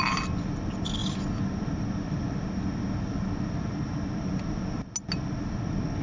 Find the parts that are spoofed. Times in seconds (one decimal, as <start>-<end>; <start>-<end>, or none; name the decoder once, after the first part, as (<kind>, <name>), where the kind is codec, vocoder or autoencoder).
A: none